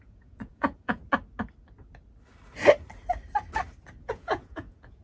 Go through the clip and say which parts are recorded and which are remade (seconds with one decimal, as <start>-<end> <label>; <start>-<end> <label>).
0.0-1.0 remade; 1.0-4.0 recorded; 4.0-5.0 remade